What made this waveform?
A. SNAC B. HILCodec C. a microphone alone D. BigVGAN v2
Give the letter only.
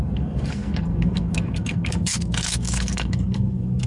A